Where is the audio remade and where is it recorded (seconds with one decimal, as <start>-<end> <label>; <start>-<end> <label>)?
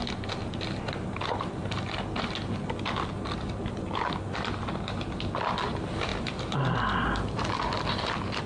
0.0-8.5 recorded